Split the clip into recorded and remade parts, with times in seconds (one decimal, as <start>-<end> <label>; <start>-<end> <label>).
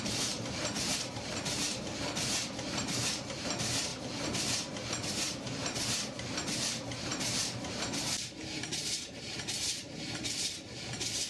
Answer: 0.0-11.3 remade